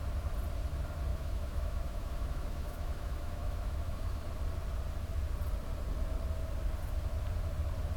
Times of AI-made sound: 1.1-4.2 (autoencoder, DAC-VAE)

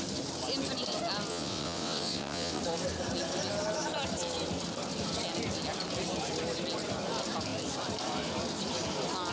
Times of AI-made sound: 1.3-2.6 (vocoder, WaveNeXt)